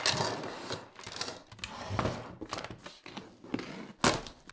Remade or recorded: recorded